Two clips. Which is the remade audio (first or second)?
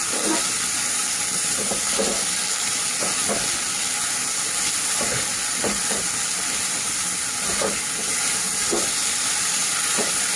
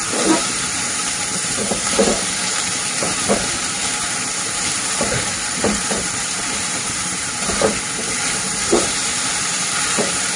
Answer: second